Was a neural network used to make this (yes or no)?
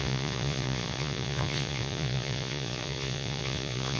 yes